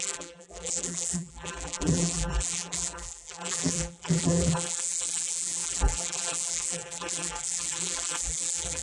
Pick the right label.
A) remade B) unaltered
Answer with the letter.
A